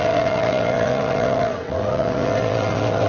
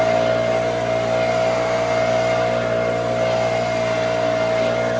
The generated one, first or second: first